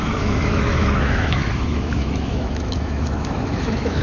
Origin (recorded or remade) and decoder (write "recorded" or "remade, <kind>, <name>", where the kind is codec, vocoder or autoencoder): remade, autoencoder, DAC-VAE